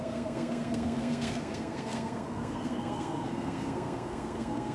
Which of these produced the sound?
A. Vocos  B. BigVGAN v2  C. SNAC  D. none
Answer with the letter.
C